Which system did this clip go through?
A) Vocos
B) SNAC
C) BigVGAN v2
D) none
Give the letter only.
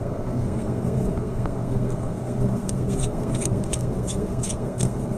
B